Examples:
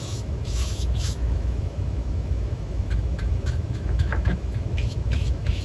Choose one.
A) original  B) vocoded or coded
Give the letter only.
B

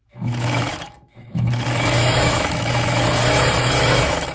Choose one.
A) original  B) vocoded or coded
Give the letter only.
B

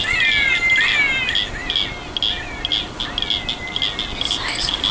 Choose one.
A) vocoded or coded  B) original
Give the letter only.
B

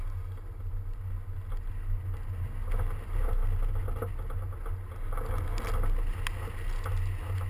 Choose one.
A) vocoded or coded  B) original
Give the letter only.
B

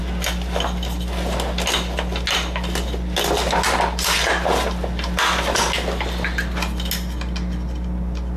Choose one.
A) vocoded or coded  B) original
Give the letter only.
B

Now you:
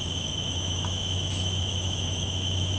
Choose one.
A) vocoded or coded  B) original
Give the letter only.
A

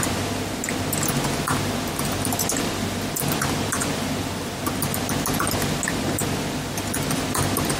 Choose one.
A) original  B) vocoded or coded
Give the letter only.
A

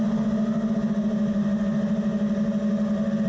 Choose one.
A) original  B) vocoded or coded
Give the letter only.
A